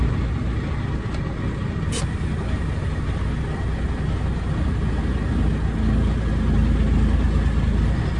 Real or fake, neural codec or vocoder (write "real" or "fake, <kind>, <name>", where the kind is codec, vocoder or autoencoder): real